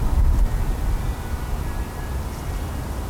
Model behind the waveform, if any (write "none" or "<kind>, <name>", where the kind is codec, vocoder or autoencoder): vocoder, BigVGAN v2